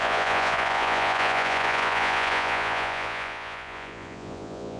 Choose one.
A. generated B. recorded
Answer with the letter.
A